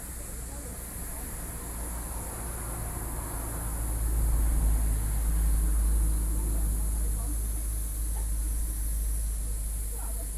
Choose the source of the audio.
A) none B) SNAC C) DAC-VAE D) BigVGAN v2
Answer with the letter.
A